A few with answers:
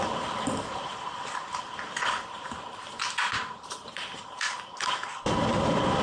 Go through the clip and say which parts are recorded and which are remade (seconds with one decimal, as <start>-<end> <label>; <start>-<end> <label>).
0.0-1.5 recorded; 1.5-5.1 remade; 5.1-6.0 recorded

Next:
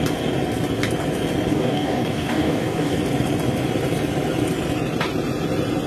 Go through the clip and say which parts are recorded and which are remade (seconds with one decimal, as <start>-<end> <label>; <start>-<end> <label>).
0.0-1.5 recorded; 1.5-3.0 remade; 3.0-5.9 recorded

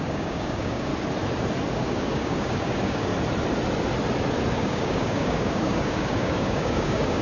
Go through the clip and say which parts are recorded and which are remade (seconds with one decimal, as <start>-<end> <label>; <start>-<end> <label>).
0.0-0.9 remade; 0.9-1.7 recorded; 1.7-3.1 remade; 3.1-4.5 recorded; 4.5-7.2 remade

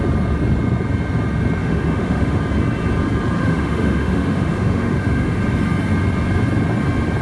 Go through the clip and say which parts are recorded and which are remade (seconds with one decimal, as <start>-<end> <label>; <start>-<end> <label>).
0.0-1.6 recorded; 1.6-2.4 remade; 2.4-3.4 recorded; 3.4-5.4 remade; 5.4-7.2 recorded

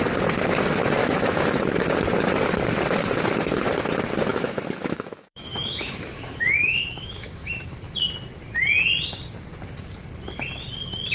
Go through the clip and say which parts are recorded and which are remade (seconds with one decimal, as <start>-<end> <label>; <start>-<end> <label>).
0.0-1.0 recorded; 1.0-1.6 remade; 1.6-4.3 recorded; 4.3-7.6 remade; 7.6-11.1 recorded